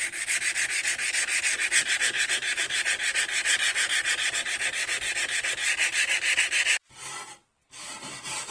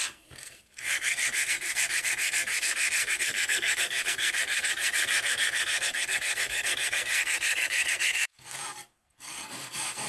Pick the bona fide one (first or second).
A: first